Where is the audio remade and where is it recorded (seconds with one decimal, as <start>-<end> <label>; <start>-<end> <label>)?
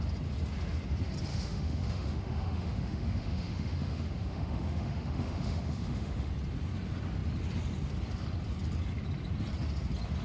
0.0-1.3 recorded; 1.3-6.3 remade; 6.3-10.2 recorded